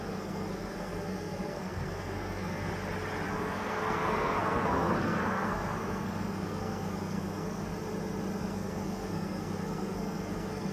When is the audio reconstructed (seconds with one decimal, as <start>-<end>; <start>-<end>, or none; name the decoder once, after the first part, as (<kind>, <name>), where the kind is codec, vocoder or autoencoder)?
0.0-2.7 (codec, SNAC); 3.3-7.7; 8.4-10.7